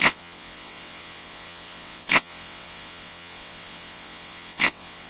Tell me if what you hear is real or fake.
fake